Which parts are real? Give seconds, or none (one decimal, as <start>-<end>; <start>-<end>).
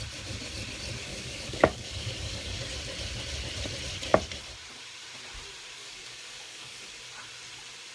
0.0-1.1; 2.6-5.8; 7.0-7.9